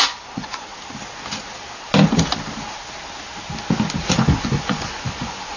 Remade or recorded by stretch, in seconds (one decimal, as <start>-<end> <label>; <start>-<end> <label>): 0.0-0.7 remade; 0.7-4.1 recorded; 4.1-5.6 remade